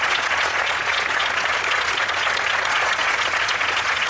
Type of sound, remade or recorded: remade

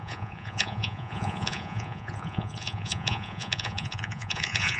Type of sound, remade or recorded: remade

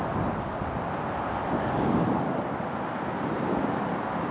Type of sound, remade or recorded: recorded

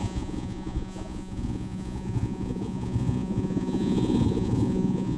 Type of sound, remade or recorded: remade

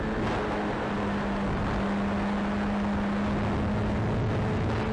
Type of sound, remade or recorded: recorded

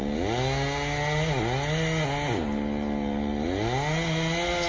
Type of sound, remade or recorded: recorded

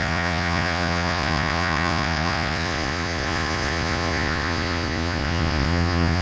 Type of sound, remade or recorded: remade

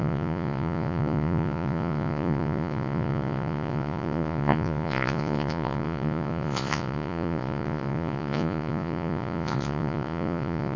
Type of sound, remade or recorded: remade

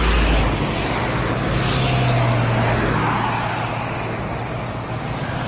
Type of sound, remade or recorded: recorded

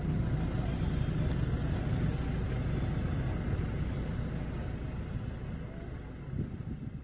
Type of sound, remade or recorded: recorded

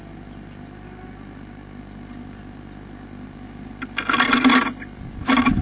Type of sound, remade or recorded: recorded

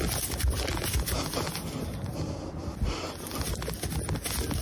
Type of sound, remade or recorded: recorded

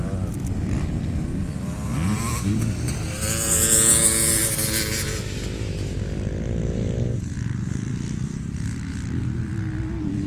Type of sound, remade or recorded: recorded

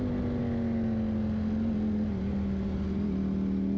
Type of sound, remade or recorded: recorded